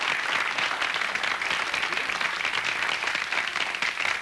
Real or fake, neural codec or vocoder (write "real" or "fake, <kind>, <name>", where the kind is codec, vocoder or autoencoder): real